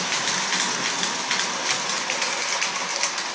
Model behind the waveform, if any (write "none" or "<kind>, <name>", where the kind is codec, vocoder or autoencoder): none